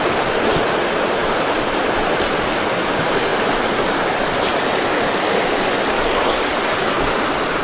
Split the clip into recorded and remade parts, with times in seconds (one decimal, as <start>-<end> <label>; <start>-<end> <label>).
0.0-1.2 recorded; 1.2-1.8 remade; 1.8-4.5 recorded; 4.5-5.3 remade; 5.3-7.6 recorded